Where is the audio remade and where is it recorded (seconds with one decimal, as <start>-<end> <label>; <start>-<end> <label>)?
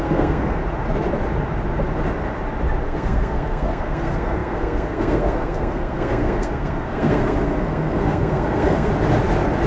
0.0-0.6 remade; 0.6-2.8 recorded; 2.8-8.9 remade; 8.9-9.7 recorded